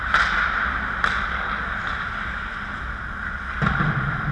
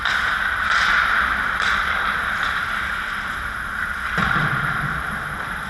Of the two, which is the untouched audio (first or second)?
first